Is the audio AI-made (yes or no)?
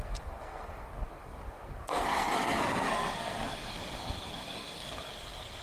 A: yes